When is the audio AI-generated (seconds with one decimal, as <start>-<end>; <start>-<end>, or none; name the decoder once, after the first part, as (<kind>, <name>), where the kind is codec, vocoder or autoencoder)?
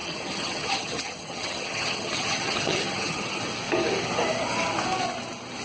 0.0-3.4 (vocoder, HiFi-GAN)